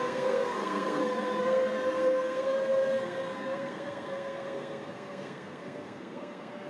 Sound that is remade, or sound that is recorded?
remade